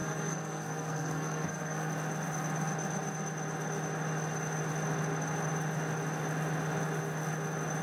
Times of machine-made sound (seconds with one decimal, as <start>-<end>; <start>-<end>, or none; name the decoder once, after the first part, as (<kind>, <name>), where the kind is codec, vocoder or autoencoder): 0.0-1.9 (codec, SNAC)